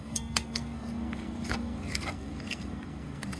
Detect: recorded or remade remade